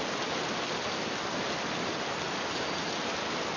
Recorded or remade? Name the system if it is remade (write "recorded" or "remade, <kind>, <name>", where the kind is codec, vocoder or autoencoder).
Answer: recorded